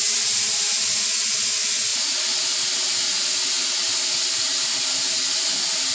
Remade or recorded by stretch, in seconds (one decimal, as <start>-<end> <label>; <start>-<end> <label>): 0.0-5.9 recorded